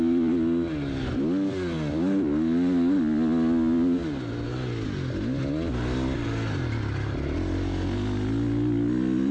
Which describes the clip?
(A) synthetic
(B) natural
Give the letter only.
B